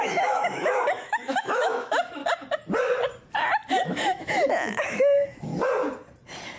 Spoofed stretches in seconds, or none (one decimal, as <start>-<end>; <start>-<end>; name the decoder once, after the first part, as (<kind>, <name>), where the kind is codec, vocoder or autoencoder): 0.0-2.2 (autoencoder, DAC-VAE); 3.8-5.5